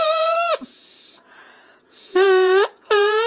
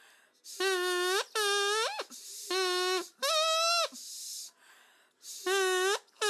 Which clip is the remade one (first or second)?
first